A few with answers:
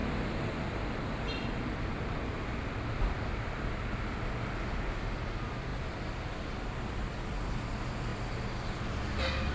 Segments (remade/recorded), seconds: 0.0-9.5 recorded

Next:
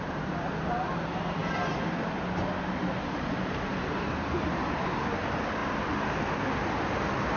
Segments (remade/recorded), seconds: 0.0-3.7 recorded; 3.7-4.6 remade; 4.6-7.4 recorded

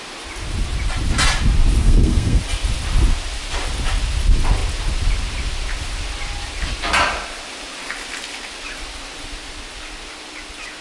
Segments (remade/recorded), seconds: 0.0-1.8 recorded; 1.8-2.4 remade; 2.4-10.8 recorded

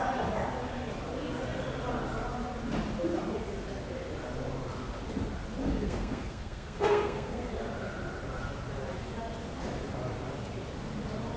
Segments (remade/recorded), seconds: 0.0-5.6 recorded; 5.6-7.5 remade; 7.5-11.4 recorded

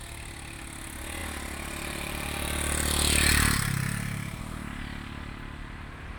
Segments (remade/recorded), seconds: 0.0-6.2 recorded

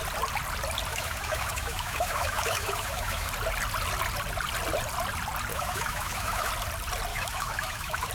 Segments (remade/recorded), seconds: 0.0-0.9 recorded; 0.9-3.3 remade; 3.3-5.5 recorded; 5.5-6.5 remade; 6.5-7.1 recorded; 7.1-8.1 remade